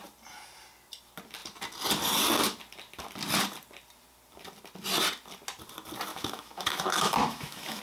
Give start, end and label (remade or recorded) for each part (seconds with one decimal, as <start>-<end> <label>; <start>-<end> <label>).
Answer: 0.0-6.1 recorded; 6.1-7.8 remade